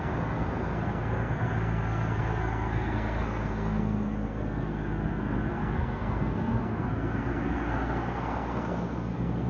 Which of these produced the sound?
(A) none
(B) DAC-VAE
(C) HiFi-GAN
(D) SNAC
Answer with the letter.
D